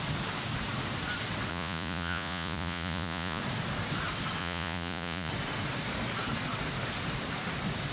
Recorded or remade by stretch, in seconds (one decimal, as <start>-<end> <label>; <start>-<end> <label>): 0.0-1.5 recorded; 1.5-3.4 remade; 3.4-4.4 recorded; 4.4-5.3 remade; 5.3-7.9 recorded